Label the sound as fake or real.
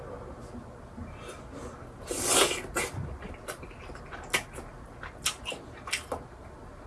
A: real